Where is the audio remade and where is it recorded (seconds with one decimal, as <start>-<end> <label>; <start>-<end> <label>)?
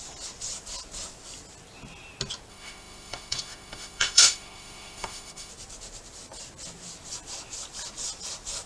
0.0-2.5 recorded; 2.5-5.5 remade; 5.5-8.7 recorded